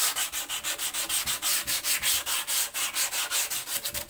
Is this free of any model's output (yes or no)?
yes